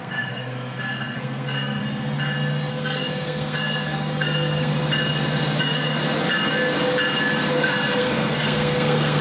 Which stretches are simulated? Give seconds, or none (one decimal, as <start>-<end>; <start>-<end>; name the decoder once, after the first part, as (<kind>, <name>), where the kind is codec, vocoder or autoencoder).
0.0-1.8 (codec, SNAC); 2.7-4.7; 5.6-6.0; 7.5-9.2